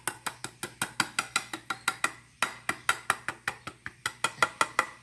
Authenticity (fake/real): real